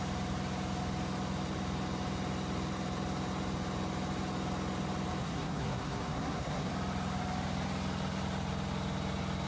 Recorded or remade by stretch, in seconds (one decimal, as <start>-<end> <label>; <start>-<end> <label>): 0.0-5.2 recorded; 5.2-6.7 remade; 6.7-9.5 recorded